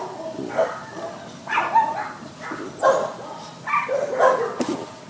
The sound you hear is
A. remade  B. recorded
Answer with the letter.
B